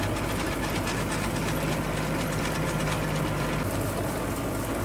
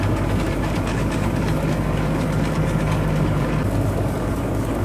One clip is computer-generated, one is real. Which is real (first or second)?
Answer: first